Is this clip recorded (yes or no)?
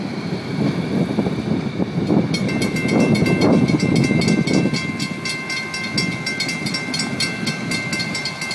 yes